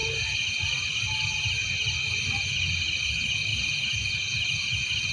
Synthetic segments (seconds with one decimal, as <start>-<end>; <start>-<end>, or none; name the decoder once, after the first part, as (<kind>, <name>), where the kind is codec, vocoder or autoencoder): none